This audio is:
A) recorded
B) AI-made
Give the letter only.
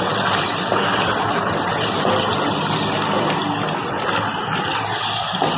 B